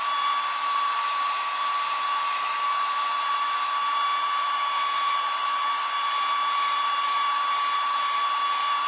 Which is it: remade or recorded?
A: recorded